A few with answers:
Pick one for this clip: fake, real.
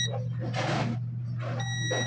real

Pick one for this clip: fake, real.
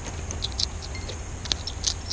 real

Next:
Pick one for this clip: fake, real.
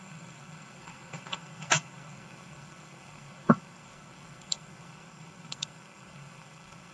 fake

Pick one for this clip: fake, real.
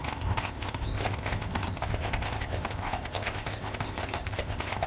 fake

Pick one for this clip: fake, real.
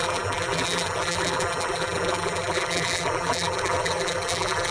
fake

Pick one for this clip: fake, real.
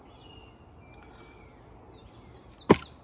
real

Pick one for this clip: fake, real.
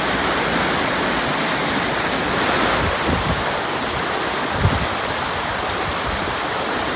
real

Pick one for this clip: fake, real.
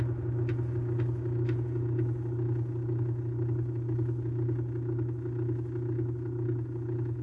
real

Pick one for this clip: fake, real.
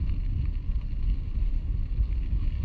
real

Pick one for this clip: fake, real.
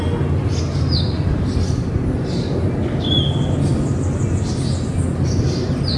real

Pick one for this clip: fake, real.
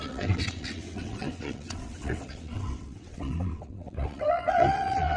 fake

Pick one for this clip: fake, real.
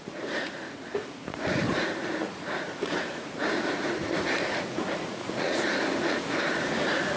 fake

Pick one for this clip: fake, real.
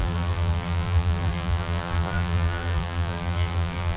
fake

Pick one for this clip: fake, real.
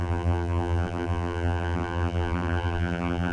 fake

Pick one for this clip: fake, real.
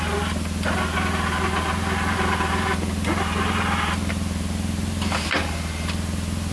real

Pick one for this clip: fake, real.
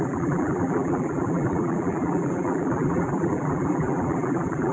fake